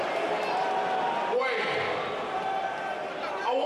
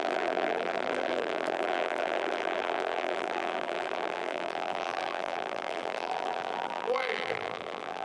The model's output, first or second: second